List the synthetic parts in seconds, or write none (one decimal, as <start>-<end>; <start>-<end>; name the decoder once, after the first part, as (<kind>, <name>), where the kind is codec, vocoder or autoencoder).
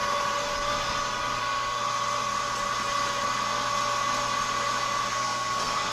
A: 1.4-1.8 (codec, SNAC); 5.1-5.9